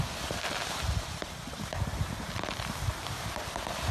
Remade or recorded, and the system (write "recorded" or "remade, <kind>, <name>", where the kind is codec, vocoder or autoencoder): remade, vocoder, BigVGAN v2